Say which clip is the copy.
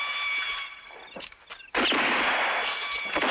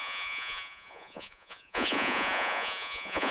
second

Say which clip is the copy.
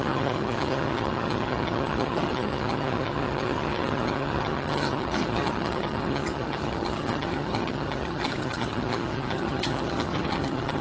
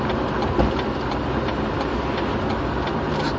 first